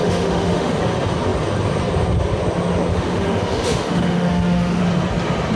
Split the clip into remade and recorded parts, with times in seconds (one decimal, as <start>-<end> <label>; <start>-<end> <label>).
0.0-0.8 remade; 0.8-2.9 recorded; 2.9-4.8 remade; 4.8-5.6 recorded